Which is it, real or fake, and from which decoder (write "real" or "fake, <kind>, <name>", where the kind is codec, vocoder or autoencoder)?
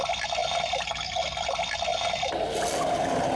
real